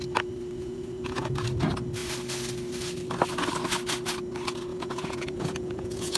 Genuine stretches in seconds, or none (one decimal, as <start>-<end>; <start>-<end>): 0.0-0.6; 1.3-4.7